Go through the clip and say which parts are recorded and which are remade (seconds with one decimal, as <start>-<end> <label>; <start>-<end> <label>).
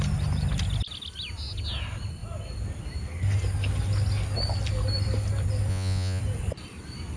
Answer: 0.0-5.7 recorded; 5.7-6.2 remade; 6.2-7.2 recorded